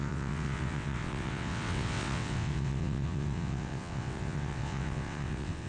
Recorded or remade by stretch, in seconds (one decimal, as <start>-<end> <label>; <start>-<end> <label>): 0.0-5.7 remade